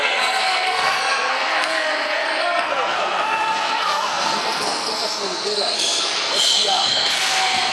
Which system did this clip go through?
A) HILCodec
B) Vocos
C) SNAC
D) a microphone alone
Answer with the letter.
C